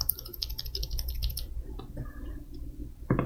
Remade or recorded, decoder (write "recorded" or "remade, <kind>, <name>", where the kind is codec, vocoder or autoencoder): remade, vocoder, BigVGAN v2